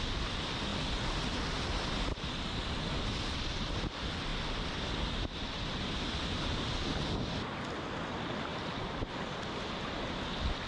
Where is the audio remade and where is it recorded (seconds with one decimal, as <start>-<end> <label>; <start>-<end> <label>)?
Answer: 0.0-10.7 recorded